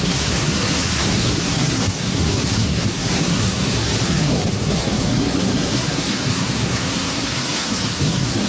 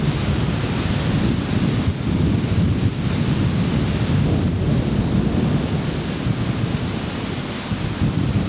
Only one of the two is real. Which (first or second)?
second